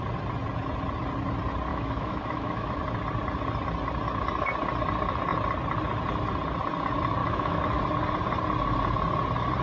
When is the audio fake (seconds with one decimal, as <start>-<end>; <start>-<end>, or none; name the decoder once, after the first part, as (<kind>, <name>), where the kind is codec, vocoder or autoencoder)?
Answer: 1.7-2.8 (autoencoder, DAC-VAE); 7.2-7.8